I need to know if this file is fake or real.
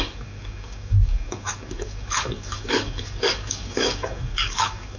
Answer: fake